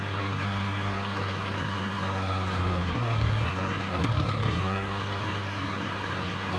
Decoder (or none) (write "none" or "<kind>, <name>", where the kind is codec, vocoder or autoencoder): codec, SNAC